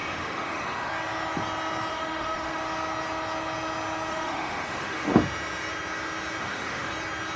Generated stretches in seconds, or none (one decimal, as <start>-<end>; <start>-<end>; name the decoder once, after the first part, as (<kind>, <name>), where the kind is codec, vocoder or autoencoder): 0.0-0.9 (autoencoder, DAC-VAE); 1.9-2.6; 4.1-5.1; 6.4-6.9